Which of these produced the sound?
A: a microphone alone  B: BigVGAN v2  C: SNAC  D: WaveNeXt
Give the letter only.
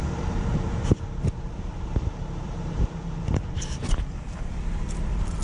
B